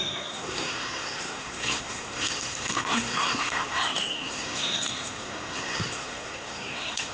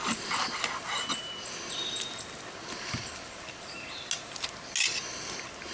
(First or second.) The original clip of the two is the second